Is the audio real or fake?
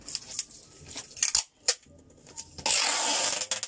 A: real